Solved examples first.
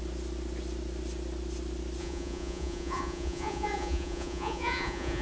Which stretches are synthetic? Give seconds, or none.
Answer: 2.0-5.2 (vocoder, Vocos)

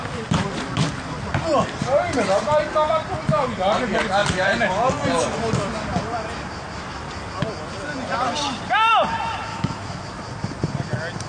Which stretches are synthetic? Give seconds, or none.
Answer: 9.5-10.0 (autoencoder, DAC-VAE)

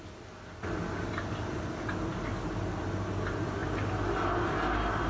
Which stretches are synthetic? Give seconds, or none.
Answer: none